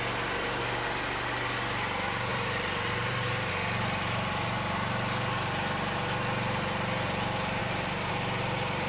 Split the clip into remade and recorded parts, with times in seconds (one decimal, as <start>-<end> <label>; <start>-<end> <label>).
0.0-2.3 recorded; 2.3-3.5 remade; 3.5-7.6 recorded; 7.6-8.1 remade; 8.1-8.9 recorded